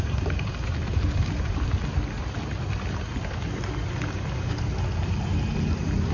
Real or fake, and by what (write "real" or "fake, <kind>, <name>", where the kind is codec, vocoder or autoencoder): real